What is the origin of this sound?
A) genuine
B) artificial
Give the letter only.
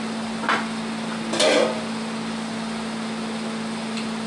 A